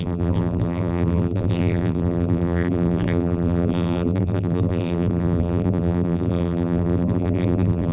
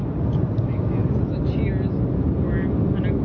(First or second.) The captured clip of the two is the second